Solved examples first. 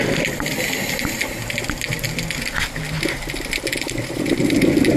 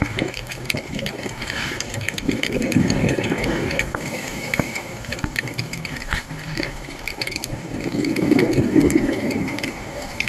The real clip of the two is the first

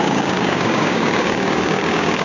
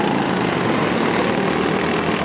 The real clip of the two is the second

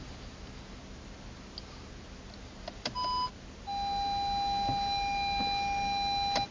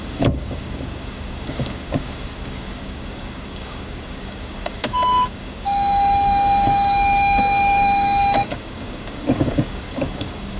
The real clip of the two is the first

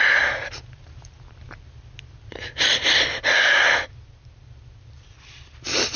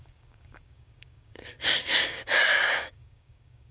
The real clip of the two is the first